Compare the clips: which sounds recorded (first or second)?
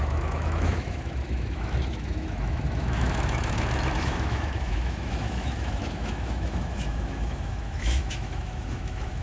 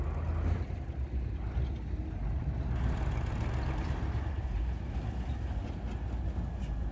second